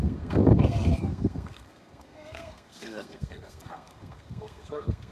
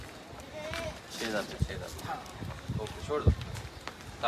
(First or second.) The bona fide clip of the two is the second